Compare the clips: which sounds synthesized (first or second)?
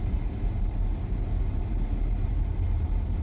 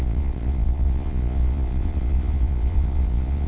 second